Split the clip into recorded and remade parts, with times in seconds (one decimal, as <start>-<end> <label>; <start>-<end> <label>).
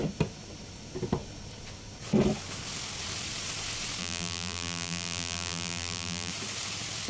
0.0-4.0 recorded; 4.0-6.3 remade; 6.3-7.1 recorded